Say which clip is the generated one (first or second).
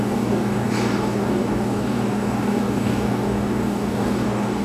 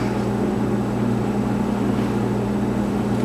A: first